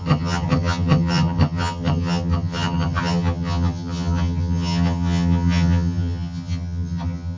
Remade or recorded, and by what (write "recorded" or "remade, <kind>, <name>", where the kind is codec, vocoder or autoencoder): remade, vocoder, HiFi-GAN